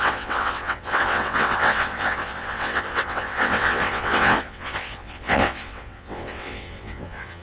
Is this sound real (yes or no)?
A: no